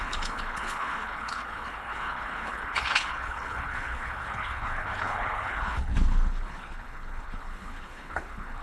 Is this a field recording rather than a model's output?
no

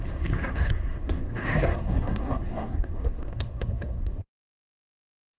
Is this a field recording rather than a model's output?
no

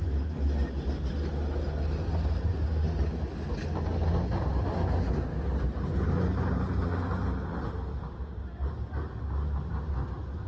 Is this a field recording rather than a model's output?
yes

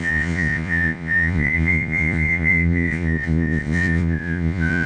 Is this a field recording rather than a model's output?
no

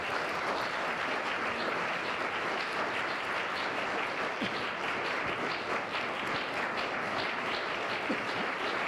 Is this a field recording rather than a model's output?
yes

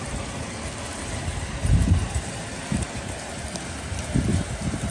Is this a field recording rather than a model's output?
yes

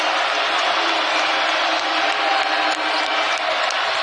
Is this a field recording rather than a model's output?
yes